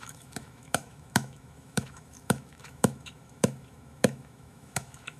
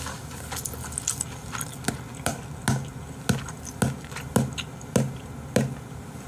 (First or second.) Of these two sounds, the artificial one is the first